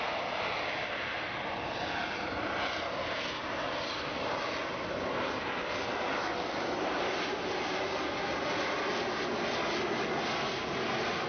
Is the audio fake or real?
real